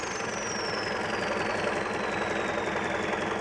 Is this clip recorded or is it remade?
recorded